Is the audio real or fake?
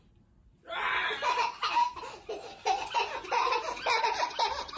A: real